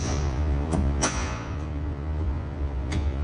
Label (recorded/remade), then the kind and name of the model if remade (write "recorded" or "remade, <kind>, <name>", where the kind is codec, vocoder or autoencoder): remade, vocoder, Vocos